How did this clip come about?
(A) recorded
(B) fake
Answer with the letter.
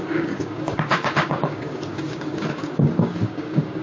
B